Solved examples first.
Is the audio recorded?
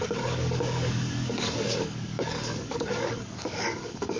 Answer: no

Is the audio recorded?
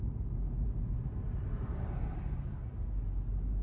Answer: yes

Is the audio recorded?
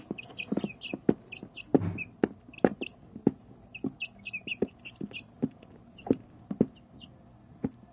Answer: yes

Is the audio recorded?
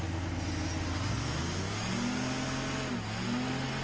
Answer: yes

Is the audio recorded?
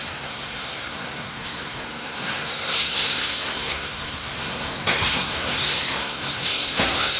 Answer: no